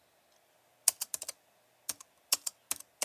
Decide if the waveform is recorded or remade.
recorded